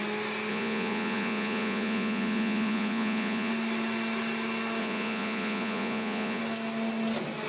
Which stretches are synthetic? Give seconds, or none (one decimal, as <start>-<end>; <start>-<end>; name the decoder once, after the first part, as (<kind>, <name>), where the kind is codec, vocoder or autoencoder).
0.5-3.5 (vocoder, Vocos); 4.8-6.4